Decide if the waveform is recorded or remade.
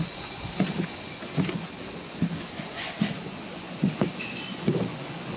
remade